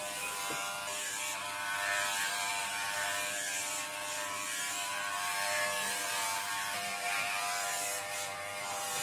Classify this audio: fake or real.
fake